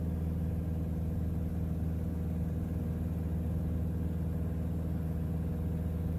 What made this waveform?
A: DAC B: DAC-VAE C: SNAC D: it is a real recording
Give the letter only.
D